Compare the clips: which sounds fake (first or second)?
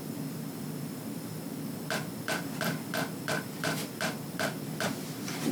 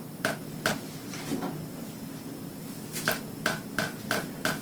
first